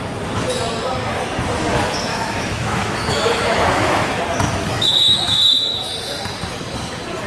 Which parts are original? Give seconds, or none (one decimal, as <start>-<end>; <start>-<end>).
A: 0.0-2.1; 4.2-4.7; 5.9-7.3